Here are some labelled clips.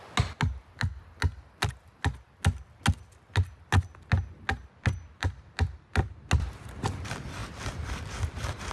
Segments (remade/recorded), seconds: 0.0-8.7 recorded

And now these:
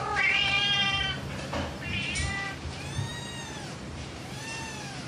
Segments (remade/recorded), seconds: 0.0-5.1 remade

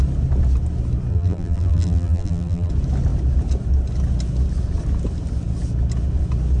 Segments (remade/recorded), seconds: 0.0-1.1 recorded; 1.1-2.7 remade; 2.7-6.6 recorded

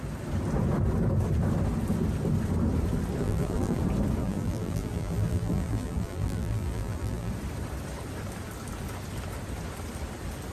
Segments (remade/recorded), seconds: 0.0-3.2 recorded; 3.2-3.8 remade; 3.8-4.2 recorded; 4.2-7.3 remade; 7.3-10.5 recorded

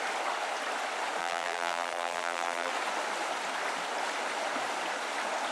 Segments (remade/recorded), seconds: 0.0-1.2 recorded; 1.2-2.7 remade; 2.7-5.5 recorded

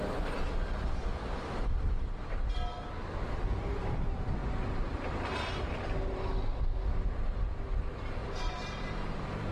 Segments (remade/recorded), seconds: 0.0-8.2 recorded; 8.2-9.5 remade

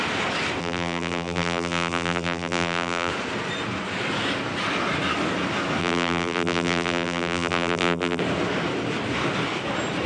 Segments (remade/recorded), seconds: 0.0-0.6 recorded; 0.6-3.1 remade; 3.1-5.8 recorded; 5.8-8.2 remade; 8.2-10.1 recorded